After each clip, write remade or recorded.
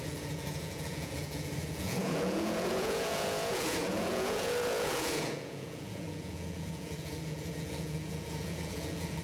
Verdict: remade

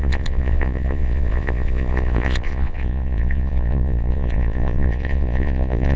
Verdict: remade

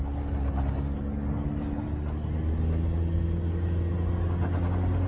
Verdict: recorded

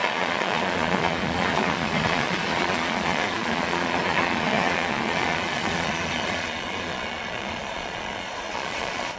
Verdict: remade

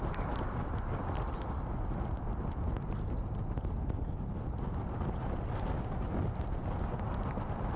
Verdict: recorded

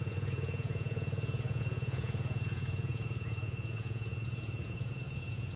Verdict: remade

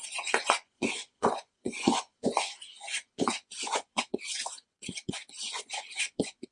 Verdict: remade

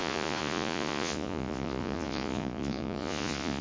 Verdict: remade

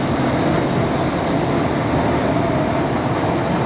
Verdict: recorded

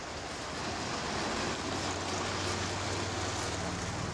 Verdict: recorded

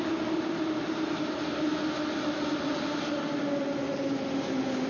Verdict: recorded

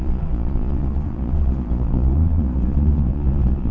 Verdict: remade